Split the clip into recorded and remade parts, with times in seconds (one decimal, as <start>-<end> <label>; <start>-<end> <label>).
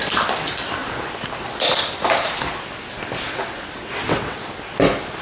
0.0-3.8 recorded; 3.8-4.4 remade; 4.4-5.2 recorded